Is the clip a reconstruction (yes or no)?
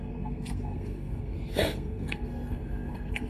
yes